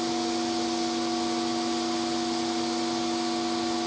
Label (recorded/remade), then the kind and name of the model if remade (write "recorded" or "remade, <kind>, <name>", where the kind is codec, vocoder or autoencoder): recorded